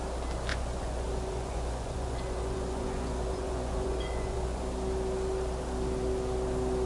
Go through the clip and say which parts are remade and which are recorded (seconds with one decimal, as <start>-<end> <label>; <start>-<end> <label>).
0.0-0.5 recorded; 0.5-4.6 remade; 4.6-6.9 recorded